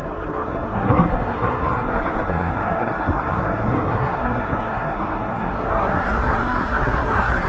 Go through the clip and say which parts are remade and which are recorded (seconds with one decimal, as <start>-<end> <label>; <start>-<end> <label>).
0.0-7.5 remade